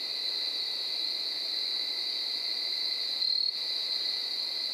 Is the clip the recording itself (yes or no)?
yes